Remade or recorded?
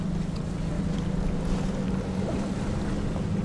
recorded